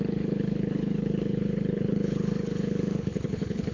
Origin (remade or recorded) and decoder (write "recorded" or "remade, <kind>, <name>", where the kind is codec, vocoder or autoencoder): remade, codec, HILCodec